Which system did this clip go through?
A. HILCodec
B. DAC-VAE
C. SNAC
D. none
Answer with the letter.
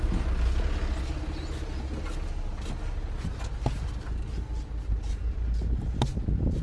D